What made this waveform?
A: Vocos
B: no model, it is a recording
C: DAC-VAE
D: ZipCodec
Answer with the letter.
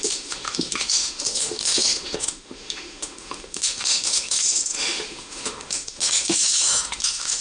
C